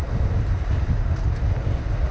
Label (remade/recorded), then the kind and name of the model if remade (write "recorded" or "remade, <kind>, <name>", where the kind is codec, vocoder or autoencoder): recorded